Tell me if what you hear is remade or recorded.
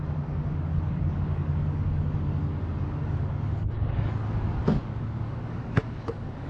remade